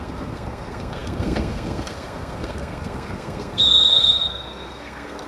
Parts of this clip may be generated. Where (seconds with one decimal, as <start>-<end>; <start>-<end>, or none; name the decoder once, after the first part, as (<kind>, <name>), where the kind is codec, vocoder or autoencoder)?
0.0-5.3 (codec, SNAC)